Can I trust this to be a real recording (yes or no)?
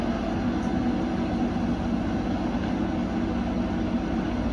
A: yes